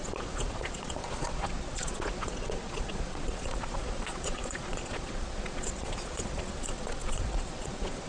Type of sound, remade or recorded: remade